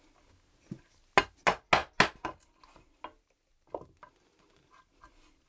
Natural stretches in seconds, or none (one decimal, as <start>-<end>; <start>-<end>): 0.0-5.5